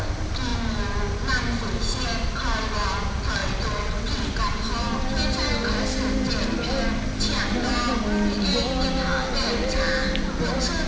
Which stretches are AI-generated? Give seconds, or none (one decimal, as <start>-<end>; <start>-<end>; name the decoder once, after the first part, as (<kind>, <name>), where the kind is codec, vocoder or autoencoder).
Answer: 3.4-4.2 (vocoder, WaveNeXt)